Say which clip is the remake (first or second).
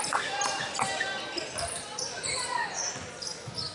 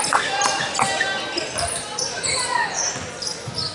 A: first